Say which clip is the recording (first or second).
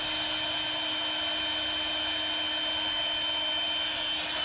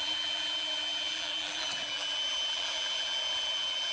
first